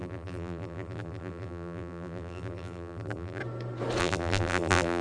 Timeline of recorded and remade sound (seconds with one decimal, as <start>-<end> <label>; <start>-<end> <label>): 0.0-3.4 remade; 3.4-4.0 recorded; 4.0-5.0 remade